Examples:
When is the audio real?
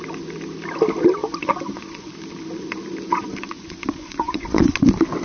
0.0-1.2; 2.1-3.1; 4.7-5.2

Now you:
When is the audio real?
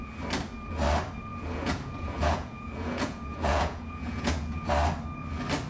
0.0-1.3; 4.7-5.7